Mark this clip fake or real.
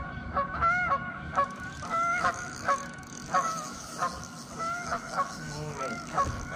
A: fake